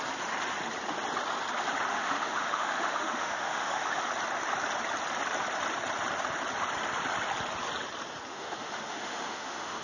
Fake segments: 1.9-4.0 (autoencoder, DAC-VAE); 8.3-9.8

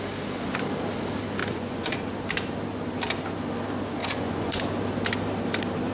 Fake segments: 1.4-2.0 (vocoder, Vocos); 4.0-4.6